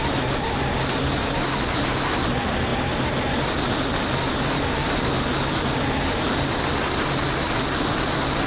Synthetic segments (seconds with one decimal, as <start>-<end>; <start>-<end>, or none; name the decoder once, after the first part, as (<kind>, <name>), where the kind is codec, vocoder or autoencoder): none